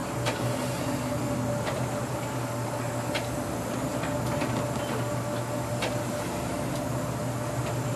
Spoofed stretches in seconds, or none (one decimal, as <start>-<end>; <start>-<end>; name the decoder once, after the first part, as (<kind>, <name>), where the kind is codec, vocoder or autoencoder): 0.0-1.1 (vocoder, BigVGAN v2)